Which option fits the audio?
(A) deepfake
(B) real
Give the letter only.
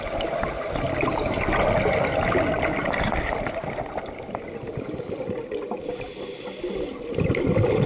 B